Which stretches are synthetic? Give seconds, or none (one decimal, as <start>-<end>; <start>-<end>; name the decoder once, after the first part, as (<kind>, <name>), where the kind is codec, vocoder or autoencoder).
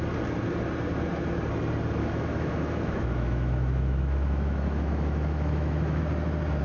2.0-6.0 (autoencoder, DAC-VAE)